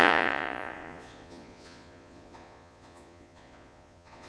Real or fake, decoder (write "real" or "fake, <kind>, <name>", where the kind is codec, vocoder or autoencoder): fake, vocoder, Vocos